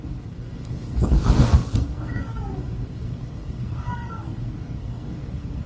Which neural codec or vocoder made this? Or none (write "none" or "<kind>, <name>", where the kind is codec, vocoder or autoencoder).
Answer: codec, SNAC